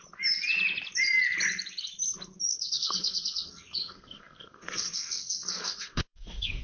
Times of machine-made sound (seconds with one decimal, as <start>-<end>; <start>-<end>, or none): 2.5-6.6

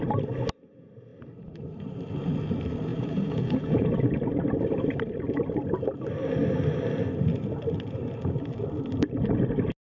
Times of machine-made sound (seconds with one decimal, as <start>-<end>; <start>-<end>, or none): 2.9-3.9

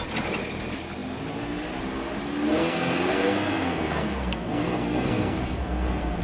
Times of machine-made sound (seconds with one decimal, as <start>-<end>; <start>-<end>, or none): 2.5-6.2

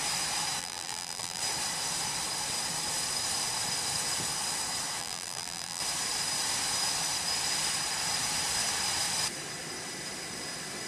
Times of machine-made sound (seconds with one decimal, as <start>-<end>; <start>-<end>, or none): 0.6-1.4; 5.0-5.8

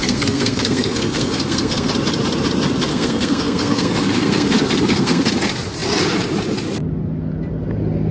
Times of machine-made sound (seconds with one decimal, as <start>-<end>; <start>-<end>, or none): 0.0-1.9; 2.9-5.3

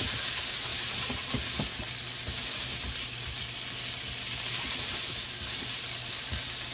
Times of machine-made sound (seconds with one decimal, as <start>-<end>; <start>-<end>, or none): 0.7-1.8